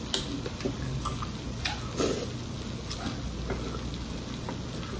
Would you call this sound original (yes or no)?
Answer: yes